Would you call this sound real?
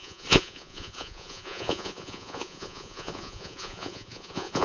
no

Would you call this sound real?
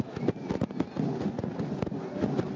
yes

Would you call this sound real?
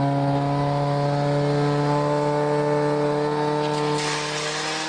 yes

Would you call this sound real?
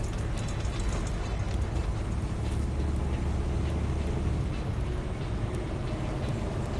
yes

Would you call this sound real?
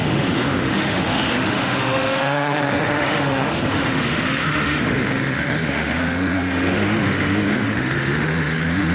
no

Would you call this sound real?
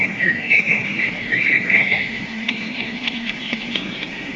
no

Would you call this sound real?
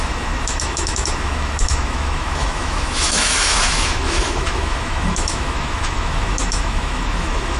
no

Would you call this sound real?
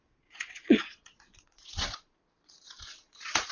no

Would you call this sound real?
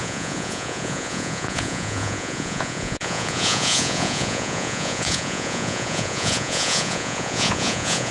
no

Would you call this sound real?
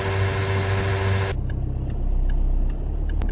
yes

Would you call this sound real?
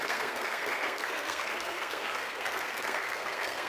no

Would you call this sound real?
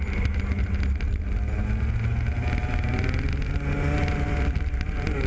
yes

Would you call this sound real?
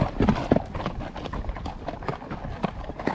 yes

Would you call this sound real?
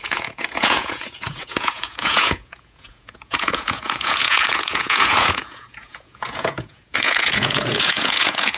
no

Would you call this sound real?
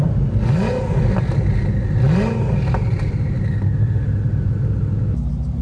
yes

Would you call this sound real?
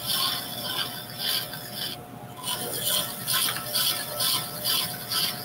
yes